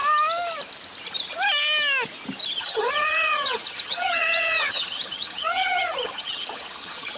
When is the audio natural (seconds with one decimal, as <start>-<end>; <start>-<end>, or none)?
0.0-2.6